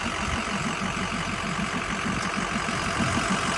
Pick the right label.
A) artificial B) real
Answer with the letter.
B